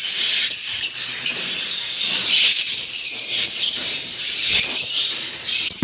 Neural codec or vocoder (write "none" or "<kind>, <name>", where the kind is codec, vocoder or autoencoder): vocoder, BigVGAN v2